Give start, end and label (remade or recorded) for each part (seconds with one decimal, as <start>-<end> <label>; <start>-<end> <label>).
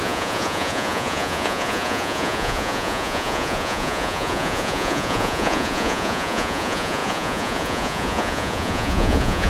0.0-9.5 remade